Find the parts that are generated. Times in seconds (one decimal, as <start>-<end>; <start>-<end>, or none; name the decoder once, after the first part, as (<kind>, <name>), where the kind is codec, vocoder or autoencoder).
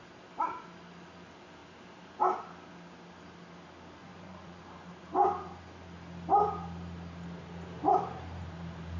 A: 4.0-4.6 (vocoder, Vocos)